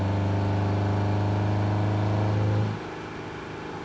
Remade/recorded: recorded